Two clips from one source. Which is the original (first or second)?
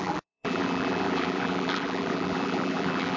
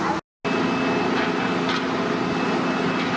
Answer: second